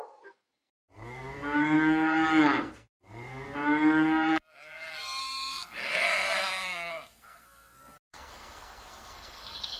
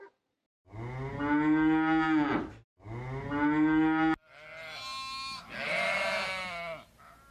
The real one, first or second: second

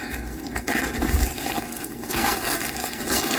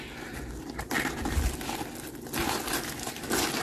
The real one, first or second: second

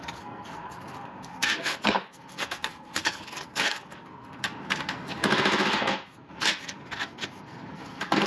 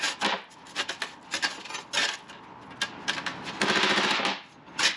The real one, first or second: second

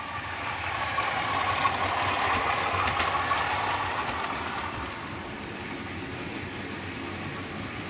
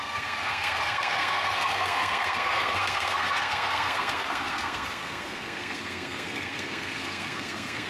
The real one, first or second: first